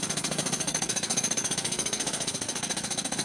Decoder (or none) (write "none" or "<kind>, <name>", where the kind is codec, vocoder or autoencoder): codec, SNAC